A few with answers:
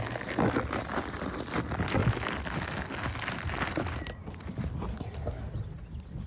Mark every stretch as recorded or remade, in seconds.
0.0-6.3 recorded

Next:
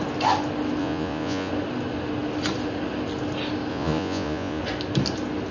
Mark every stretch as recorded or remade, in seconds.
0.0-0.8 recorded; 0.8-1.5 remade; 1.5-3.7 recorded; 3.7-4.6 remade; 4.6-5.5 recorded

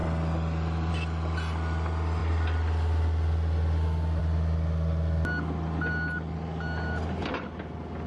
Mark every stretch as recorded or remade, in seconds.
0.0-8.1 recorded

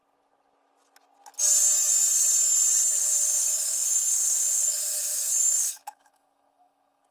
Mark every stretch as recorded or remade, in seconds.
0.0-2.1 recorded; 2.1-3.0 remade; 3.0-3.4 recorded; 3.4-7.1 remade

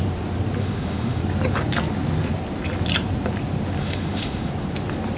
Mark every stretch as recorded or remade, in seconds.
0.0-0.6 recorded; 0.6-1.2 remade; 1.2-3.8 recorded; 3.8-4.5 remade; 4.5-5.2 recorded

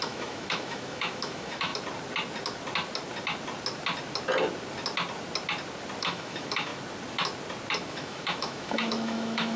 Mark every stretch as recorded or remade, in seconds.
0.0-1.7 remade; 1.7-6.0 recorded; 6.0-6.7 remade; 6.7-7.9 recorded; 7.9-9.6 remade